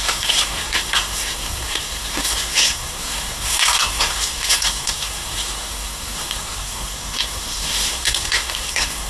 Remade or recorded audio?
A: remade